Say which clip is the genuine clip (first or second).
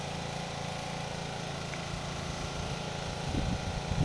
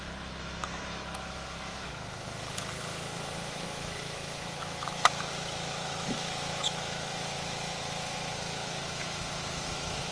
first